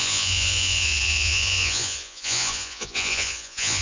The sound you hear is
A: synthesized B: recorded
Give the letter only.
A